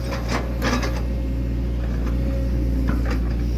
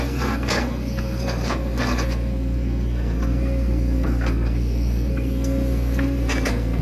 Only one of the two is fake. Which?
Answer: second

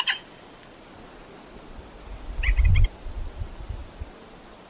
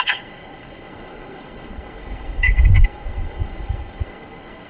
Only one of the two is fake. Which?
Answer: second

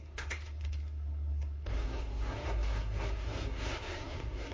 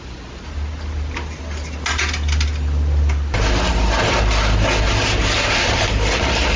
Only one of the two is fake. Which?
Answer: first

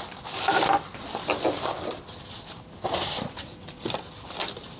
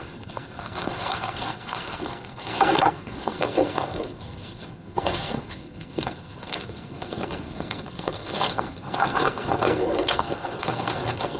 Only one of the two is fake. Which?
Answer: second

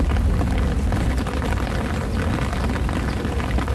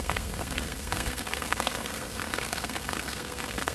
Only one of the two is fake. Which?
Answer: second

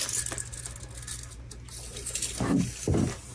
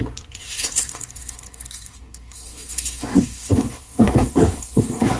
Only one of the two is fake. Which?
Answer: second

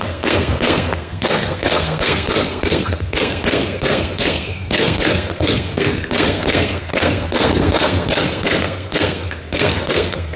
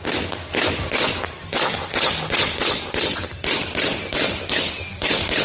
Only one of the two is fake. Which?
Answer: first